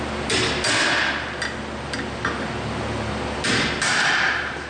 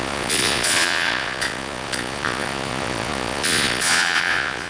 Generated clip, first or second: second